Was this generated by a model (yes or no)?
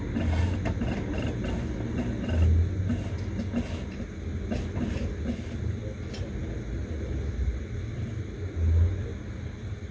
no